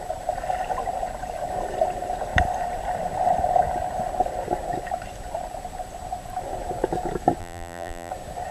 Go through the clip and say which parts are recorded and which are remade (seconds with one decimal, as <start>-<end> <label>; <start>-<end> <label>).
0.0-7.4 recorded; 7.4-8.1 remade; 8.1-8.5 recorded